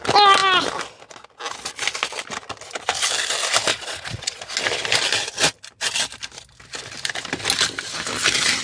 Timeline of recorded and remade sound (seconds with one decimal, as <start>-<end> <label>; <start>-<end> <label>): 0.0-3.7 recorded; 3.7-4.4 remade; 4.4-8.6 recorded